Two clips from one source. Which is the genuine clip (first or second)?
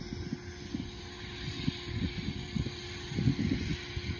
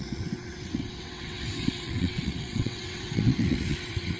first